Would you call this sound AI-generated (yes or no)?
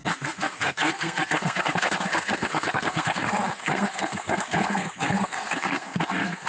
yes